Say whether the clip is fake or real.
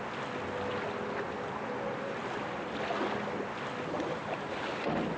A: real